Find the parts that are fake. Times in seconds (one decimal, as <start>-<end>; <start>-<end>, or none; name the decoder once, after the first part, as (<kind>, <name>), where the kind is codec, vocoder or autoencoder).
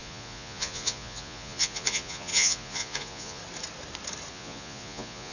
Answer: 0.0-3.4 (vocoder, Vocos); 4.3-5.3